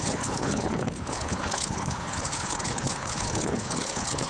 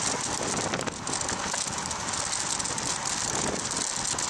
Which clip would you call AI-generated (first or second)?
first